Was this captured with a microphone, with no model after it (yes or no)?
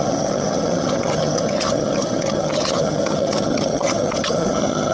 no